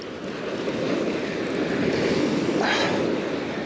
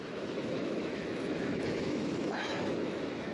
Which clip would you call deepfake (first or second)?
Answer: second